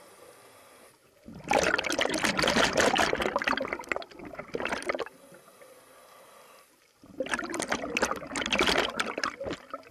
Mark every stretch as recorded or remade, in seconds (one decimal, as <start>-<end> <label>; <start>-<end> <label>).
0.0-9.9 recorded